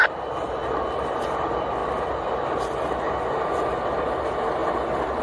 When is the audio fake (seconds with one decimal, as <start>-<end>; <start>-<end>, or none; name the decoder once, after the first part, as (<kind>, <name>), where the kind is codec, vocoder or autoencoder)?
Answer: none